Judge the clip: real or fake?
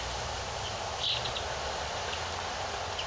real